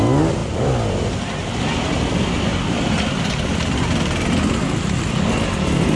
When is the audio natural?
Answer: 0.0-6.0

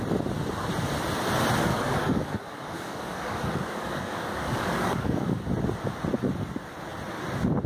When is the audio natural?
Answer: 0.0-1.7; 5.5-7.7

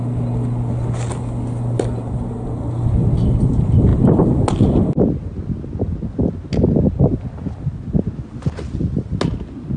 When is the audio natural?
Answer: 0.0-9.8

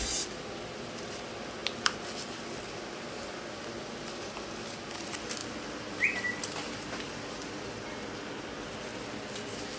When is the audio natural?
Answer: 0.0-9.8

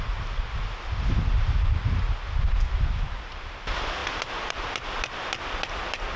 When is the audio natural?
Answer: 0.0-6.2

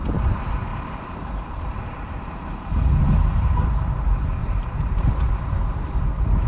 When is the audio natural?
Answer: 0.0-0.7; 2.7-4.4; 5.3-6.5